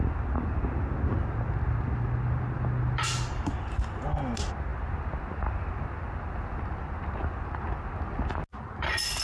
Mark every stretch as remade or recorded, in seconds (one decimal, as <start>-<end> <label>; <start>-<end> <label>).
0.0-9.2 recorded